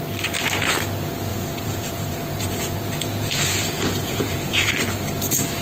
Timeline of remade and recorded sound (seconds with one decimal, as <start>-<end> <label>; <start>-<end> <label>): 0.0-1.3 recorded; 1.3-4.7 remade; 4.7-5.6 recorded